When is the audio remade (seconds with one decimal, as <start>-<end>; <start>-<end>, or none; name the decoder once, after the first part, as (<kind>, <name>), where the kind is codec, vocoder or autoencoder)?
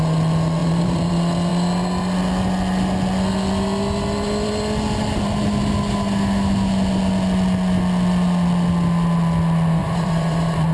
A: 0.6-1.1 (vocoder, BigVGAN v2); 9.8-10.7